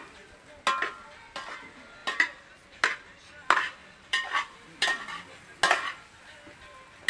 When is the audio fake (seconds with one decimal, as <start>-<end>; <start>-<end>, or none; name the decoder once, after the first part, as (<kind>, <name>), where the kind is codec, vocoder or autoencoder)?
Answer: 3.8-5.2 (vocoder, BigVGAN v2)